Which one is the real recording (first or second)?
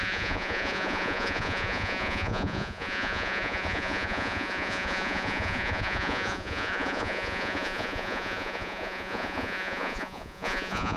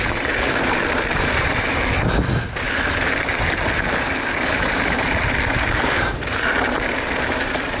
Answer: second